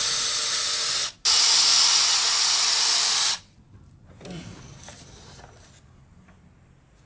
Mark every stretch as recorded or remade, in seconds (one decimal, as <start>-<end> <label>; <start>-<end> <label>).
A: 0.0-7.1 recorded